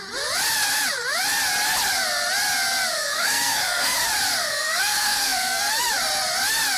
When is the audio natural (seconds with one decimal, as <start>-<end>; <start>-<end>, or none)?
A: 0.0-2.9; 4.0-4.4; 5.6-6.8